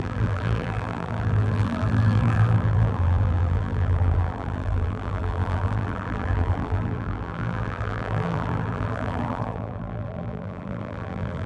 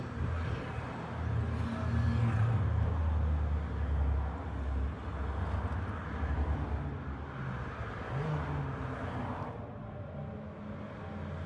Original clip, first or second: second